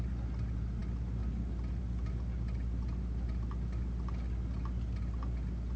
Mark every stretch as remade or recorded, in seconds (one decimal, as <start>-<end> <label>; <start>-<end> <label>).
0.0-5.8 recorded